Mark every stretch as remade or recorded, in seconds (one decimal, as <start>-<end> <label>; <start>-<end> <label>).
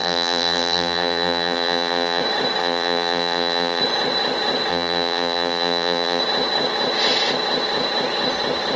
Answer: 0.0-2.2 remade; 2.2-2.6 recorded; 2.6-3.8 remade; 3.8-4.7 recorded; 4.7-6.2 remade; 6.2-8.8 recorded